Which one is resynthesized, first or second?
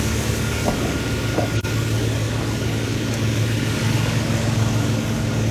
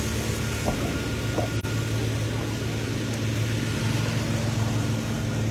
first